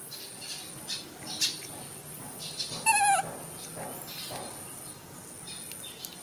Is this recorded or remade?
recorded